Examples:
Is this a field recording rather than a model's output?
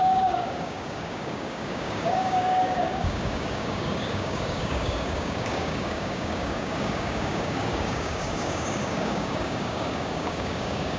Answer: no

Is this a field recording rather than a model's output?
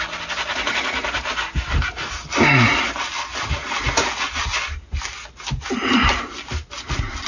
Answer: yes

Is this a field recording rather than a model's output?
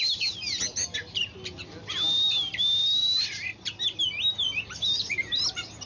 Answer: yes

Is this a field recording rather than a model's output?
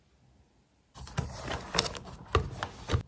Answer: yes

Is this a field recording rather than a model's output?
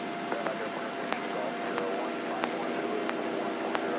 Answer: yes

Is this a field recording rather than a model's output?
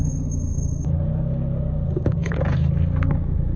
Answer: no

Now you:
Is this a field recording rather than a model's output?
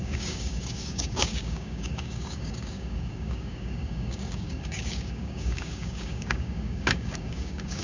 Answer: no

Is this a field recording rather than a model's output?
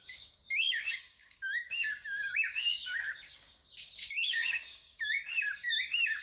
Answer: no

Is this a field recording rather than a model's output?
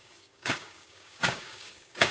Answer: no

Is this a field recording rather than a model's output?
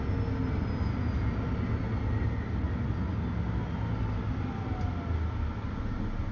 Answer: yes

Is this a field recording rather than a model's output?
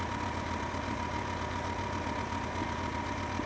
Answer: yes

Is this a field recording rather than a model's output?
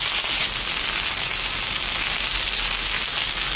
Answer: yes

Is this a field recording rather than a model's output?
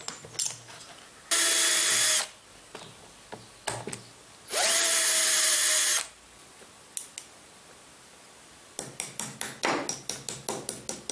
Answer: yes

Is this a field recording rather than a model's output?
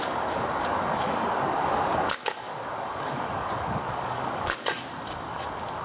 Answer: no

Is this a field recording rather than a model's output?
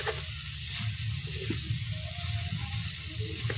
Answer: yes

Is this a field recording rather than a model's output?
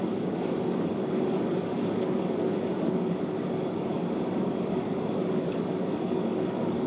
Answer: no